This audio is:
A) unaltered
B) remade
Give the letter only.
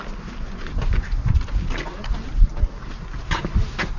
A